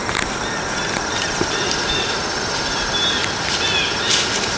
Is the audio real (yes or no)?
yes